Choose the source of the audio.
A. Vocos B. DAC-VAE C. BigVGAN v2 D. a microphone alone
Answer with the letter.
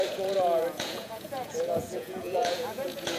A